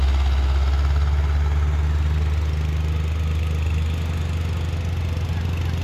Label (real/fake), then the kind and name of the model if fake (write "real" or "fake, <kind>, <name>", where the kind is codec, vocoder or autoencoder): real